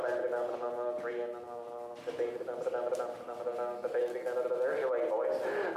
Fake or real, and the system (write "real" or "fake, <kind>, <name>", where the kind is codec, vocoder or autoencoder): real